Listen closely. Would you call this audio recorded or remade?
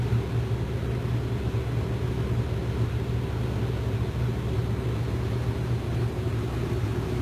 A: recorded